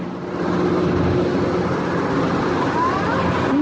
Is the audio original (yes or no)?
yes